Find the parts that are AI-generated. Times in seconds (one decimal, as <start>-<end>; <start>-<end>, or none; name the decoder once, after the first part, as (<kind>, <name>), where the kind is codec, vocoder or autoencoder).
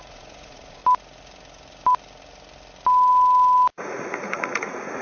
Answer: 0.0-0.8 (vocoder, Vocos); 3.8-5.0